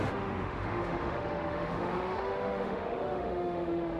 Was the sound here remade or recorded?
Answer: remade